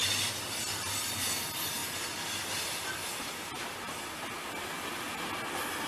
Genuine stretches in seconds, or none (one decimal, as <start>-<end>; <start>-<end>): 0.0-5.9